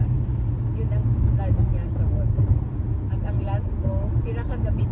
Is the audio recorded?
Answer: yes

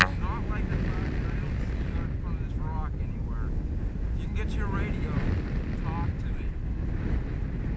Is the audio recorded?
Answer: yes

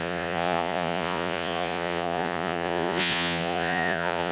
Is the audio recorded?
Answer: no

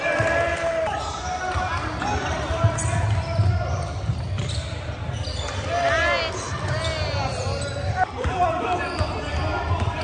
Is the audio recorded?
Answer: yes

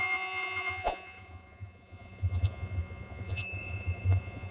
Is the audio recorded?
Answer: no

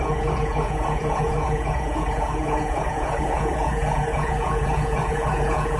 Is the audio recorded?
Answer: no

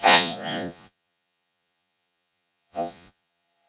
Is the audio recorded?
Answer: no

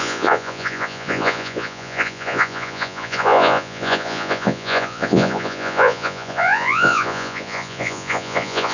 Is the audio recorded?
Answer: no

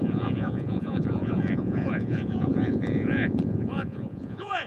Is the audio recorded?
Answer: no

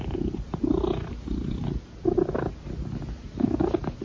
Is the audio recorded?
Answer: yes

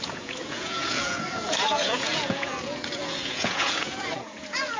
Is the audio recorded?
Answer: no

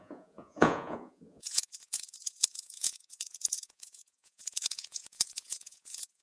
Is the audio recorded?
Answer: no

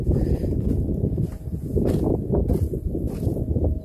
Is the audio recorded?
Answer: yes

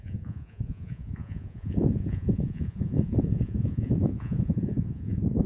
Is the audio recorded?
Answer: no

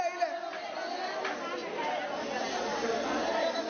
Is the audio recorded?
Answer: yes